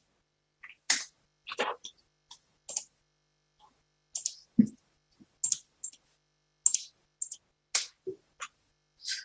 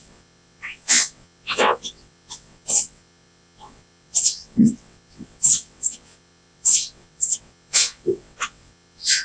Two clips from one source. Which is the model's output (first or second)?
second